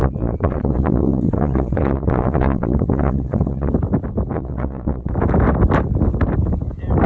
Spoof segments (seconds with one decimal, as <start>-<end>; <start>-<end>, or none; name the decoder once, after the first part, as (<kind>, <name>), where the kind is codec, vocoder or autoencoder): 0.0-3.7 (vocoder, Vocos); 4.3-5.1